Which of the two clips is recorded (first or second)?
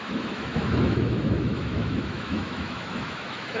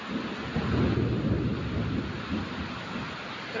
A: second